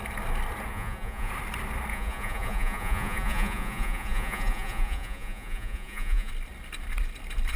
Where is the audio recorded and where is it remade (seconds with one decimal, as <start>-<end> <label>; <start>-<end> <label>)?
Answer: 0.0-0.7 recorded; 0.7-1.3 remade; 1.3-1.9 recorded; 1.9-6.3 remade; 6.3-7.6 recorded